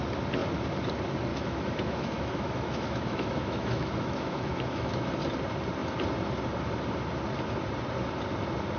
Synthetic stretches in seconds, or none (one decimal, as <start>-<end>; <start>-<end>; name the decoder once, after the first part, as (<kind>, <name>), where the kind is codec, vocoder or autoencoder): 1.3-5.2 (autoencoder, DAC-VAE)